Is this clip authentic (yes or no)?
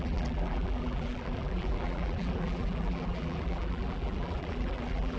no